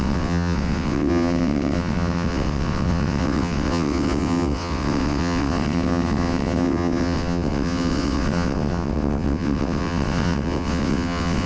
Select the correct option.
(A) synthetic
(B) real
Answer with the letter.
A